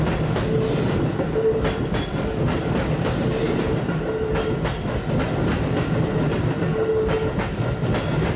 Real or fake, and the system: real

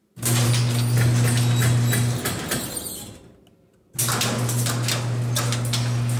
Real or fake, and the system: real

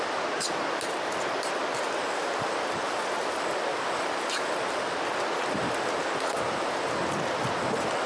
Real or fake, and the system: real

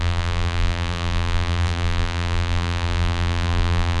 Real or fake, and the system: fake, vocoder, BigVGAN v2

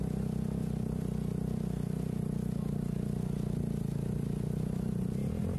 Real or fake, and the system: real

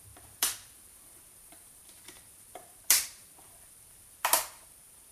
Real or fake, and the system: fake, vocoder, BigVGAN v2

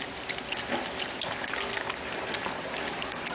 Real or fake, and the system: real